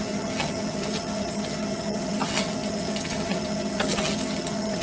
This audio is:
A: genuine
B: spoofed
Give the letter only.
B